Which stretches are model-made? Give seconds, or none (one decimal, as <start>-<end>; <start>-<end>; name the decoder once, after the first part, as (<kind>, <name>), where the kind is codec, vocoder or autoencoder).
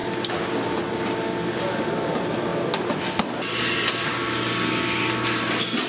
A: none